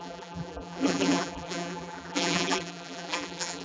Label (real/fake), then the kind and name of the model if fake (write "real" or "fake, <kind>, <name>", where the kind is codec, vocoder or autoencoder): fake, vocoder, BigVGAN v2